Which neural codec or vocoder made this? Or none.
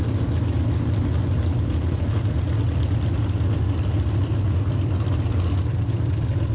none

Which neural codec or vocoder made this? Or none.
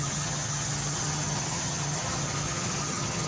vocoder, HiFi-GAN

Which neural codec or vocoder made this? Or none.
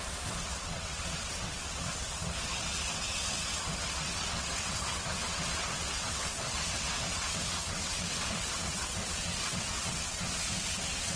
vocoder, WaveNeXt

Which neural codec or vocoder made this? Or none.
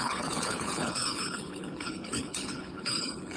codec, HILCodec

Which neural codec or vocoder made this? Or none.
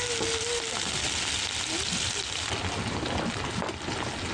none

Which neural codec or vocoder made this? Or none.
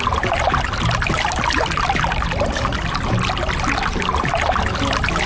vocoder, BigVGAN v2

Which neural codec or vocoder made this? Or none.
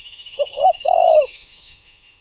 autoencoder, DAC-VAE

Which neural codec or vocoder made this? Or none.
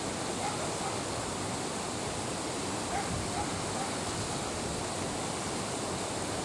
none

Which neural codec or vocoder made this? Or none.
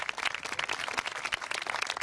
none